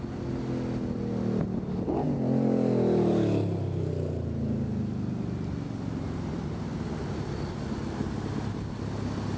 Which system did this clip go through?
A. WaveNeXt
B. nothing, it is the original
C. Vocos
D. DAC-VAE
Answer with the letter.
B